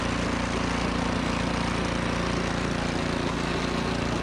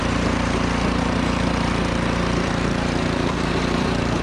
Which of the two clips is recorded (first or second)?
first